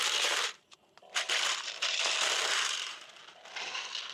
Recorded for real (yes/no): no